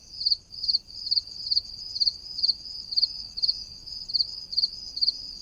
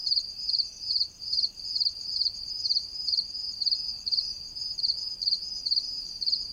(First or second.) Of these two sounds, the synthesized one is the second